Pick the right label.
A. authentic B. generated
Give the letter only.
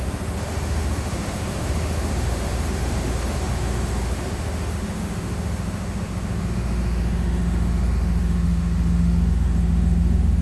B